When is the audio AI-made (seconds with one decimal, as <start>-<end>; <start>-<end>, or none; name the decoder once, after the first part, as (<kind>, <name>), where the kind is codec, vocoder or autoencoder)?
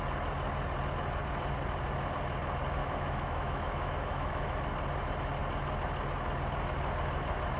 2.8-4.6 (autoencoder, DAC-VAE)